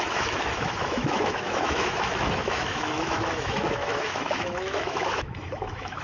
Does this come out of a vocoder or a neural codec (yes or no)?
yes